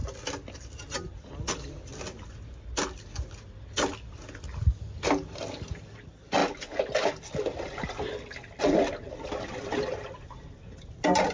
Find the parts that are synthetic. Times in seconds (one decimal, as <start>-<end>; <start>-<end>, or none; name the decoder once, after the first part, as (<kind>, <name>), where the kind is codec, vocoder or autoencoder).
none